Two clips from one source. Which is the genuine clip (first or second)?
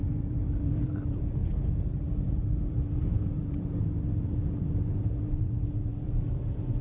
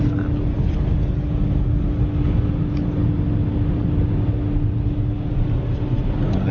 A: second